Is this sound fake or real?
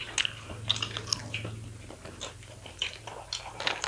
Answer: real